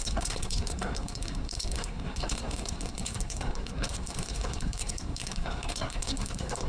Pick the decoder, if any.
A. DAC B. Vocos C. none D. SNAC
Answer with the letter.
D